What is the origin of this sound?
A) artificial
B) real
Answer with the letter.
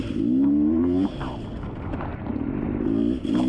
B